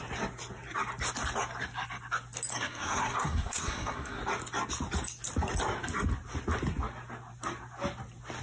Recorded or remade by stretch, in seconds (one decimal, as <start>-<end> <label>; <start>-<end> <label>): 0.0-2.5 recorded; 2.5-4.2 remade; 4.2-8.4 recorded